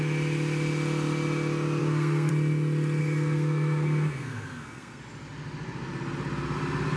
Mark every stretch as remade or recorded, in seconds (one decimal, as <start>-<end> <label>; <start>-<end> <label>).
0.0-1.8 recorded; 1.8-2.3 remade; 2.3-3.0 recorded; 3.0-5.0 remade; 5.0-7.0 recorded